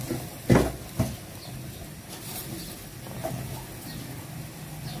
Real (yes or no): yes